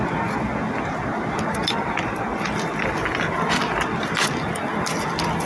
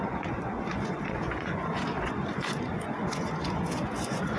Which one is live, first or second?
first